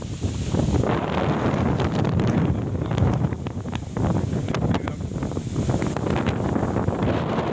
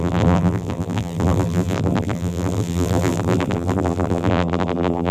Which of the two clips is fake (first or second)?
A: second